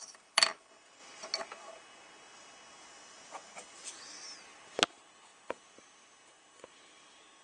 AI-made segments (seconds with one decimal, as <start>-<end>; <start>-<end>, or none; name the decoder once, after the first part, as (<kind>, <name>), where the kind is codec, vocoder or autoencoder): none